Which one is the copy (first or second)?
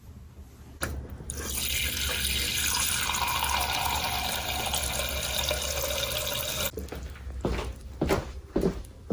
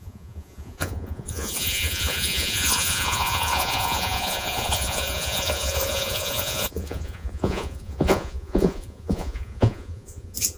second